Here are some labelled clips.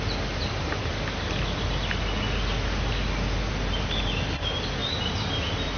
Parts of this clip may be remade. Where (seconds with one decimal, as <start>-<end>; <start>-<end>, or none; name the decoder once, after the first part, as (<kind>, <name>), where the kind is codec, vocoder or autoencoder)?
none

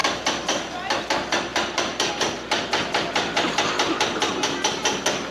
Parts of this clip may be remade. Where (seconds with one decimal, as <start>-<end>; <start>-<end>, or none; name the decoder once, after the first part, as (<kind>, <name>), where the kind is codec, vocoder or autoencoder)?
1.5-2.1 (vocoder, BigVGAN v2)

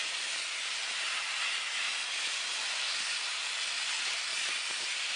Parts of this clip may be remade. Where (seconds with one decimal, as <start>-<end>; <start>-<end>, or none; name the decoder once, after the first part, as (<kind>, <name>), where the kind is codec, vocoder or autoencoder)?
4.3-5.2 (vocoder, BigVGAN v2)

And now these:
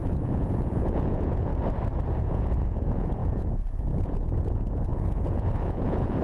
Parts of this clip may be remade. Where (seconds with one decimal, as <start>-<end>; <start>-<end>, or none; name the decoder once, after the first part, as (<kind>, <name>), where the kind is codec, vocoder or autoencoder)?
0.0-1.5 (vocoder, Vocos); 2.2-6.2

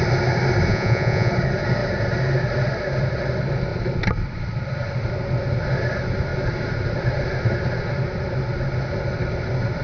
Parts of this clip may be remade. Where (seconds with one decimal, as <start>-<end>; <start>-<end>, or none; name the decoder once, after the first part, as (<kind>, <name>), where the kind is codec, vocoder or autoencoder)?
0.7-1.3 (vocoder, Vocos)